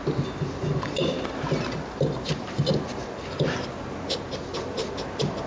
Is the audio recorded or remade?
recorded